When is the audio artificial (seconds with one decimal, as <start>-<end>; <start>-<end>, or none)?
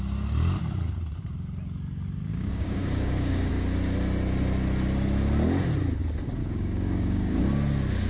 2.3-3.5; 6.4-7.4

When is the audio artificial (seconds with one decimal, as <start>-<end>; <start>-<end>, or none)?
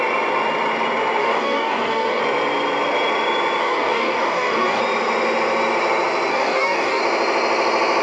1.2-2.2; 3.6-4.8; 6.3-7.0